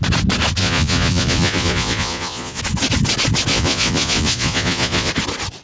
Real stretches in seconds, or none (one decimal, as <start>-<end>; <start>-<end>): 0.0-0.6; 2.6-3.5; 5.1-5.6